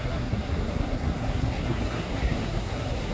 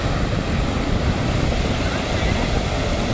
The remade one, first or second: first